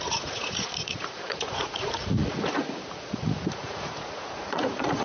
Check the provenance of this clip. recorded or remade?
remade